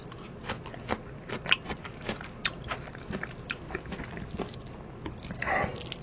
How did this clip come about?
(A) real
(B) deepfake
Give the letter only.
A